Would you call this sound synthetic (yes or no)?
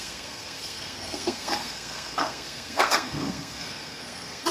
yes